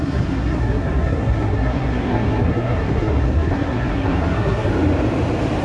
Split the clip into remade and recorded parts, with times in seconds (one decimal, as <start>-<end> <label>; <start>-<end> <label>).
0.0-4.7 remade; 4.7-5.6 recorded